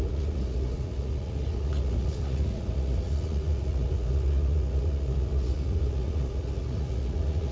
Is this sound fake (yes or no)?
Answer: yes